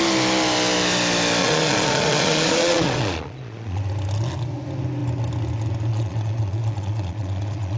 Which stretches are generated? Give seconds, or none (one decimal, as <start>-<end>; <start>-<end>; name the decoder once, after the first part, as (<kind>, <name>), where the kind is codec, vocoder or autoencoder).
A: 1.4-3.8 (vocoder, Vocos); 5.9-7.8